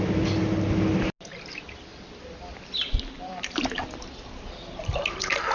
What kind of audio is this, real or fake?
real